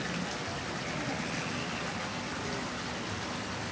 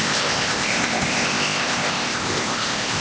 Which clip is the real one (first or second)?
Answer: first